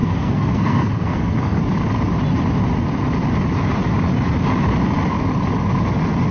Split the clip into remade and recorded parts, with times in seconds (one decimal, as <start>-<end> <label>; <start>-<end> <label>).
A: 0.0-1.6 remade; 1.6-6.3 recorded